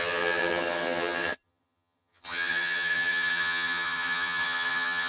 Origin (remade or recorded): remade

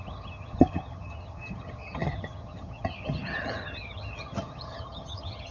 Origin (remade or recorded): remade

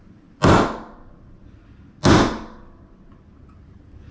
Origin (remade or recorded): recorded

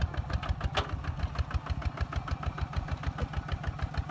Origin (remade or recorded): recorded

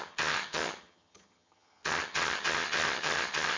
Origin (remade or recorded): remade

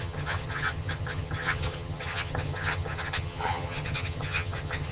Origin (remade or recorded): remade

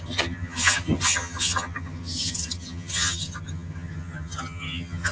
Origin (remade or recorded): remade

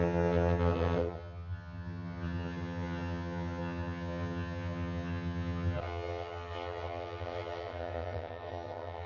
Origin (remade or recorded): remade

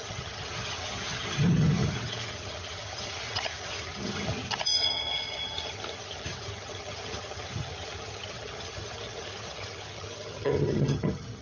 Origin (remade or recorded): remade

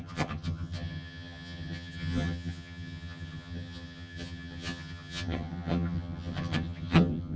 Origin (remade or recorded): remade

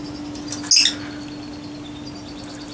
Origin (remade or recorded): recorded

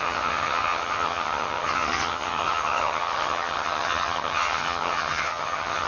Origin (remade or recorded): remade